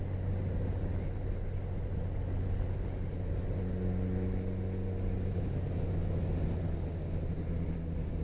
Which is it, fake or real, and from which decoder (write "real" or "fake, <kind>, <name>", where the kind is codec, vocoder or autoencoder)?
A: real